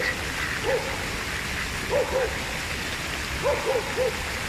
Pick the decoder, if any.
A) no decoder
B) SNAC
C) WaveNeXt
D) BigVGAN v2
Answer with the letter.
A